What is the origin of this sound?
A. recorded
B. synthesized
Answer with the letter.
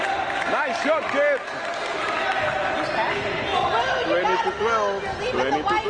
A